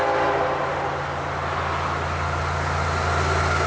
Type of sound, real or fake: real